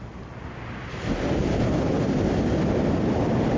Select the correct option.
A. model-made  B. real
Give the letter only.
B